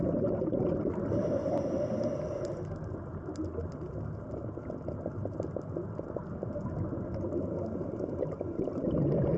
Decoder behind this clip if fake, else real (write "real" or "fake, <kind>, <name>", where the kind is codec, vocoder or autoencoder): real